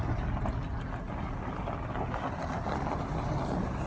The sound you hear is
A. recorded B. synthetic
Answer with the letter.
A